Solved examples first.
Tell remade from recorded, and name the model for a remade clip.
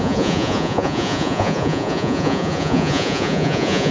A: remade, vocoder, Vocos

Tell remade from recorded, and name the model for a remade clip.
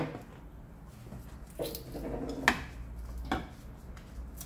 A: recorded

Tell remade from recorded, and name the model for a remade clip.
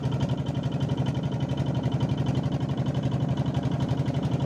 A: remade, vocoder, BigVGAN v2